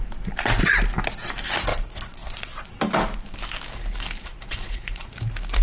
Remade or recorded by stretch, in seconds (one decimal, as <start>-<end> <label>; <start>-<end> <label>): 0.0-1.7 recorded; 1.7-2.7 remade; 2.7-4.2 recorded; 4.2-5.1 remade; 5.1-5.6 recorded

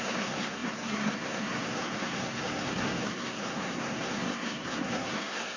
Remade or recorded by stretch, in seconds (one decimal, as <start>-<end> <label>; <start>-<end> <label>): 0.0-5.6 remade